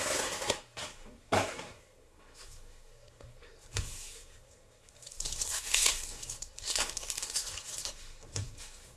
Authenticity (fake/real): fake